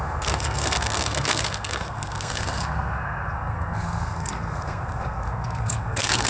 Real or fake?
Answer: fake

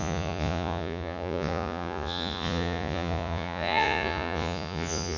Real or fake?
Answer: fake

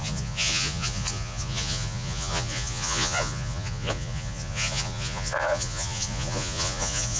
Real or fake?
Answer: fake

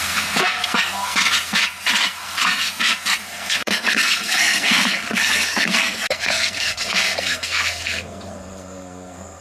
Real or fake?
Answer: fake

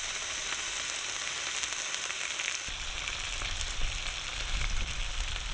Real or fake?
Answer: real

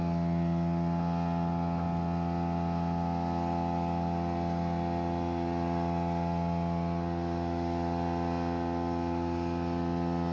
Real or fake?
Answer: real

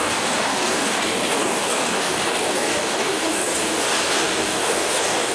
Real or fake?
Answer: fake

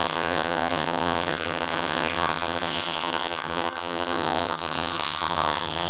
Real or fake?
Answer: fake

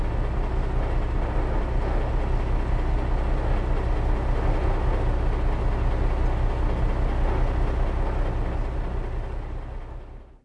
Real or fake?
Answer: real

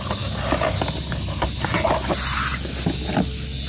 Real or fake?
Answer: real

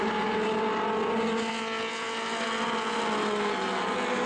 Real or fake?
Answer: real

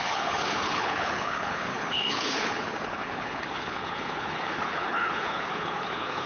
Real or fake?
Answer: fake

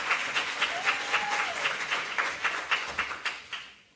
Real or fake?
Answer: fake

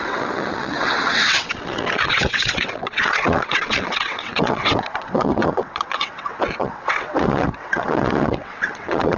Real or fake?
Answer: fake